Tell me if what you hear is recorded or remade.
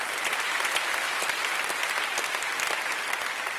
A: recorded